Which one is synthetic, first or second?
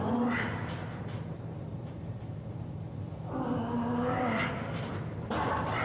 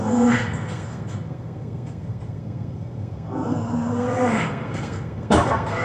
second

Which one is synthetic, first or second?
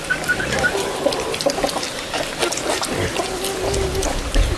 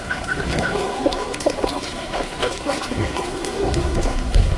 second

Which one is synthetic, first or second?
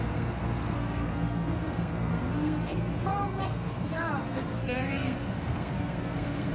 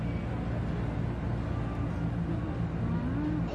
first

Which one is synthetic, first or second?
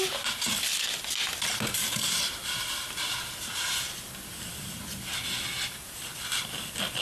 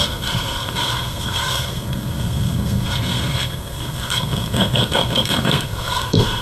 second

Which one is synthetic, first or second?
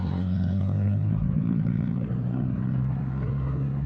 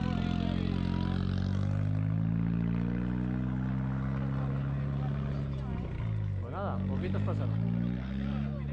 first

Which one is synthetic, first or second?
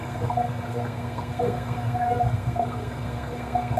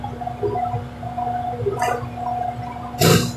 first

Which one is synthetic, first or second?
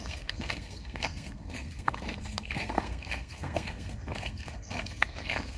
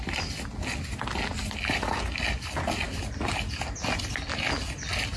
first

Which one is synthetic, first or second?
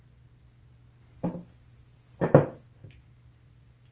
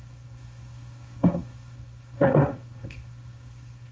second